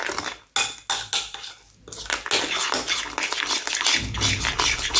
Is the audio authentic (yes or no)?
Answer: yes